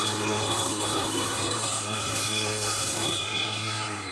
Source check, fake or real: fake